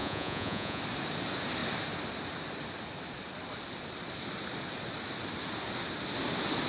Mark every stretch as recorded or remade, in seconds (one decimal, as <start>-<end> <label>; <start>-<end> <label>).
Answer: 0.0-0.8 remade; 0.8-6.7 recorded